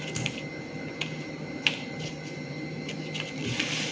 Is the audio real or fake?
real